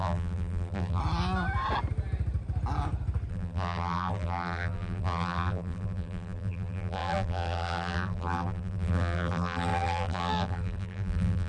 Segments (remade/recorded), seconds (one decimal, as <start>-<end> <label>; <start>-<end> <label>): 0.0-1.0 remade; 1.0-3.3 recorded; 3.3-11.5 remade